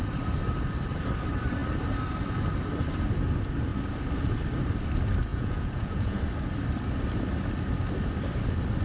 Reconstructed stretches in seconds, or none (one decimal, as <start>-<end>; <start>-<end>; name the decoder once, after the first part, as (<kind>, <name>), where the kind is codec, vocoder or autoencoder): 5.3-6.2 (vocoder, Vocos)